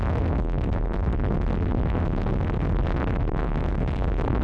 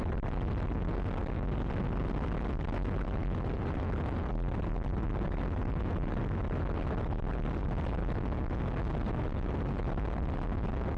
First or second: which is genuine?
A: second